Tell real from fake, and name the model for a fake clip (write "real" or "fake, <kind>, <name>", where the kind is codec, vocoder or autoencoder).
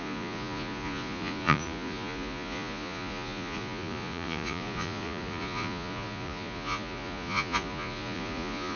fake, vocoder, Vocos